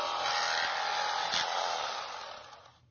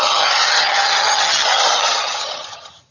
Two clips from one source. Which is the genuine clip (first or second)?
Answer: first